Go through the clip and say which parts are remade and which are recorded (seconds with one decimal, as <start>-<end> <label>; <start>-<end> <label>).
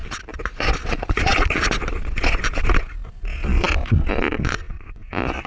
0.0-0.8 recorded; 0.8-5.5 remade